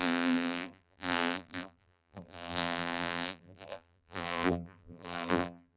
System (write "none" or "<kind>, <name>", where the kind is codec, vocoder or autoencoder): vocoder, BigVGAN v2